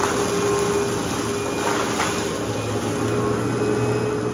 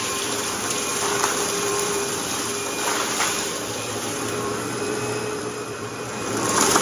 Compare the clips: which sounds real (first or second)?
first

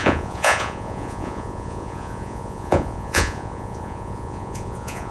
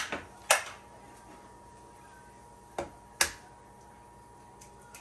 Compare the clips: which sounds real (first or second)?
second